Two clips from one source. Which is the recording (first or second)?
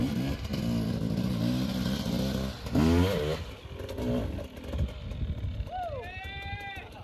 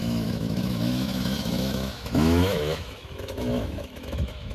first